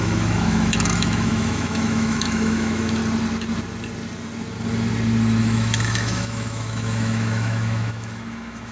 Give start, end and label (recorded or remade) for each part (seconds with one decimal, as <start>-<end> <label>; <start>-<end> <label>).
0.0-3.0 remade; 3.0-5.4 recorded; 5.4-8.7 remade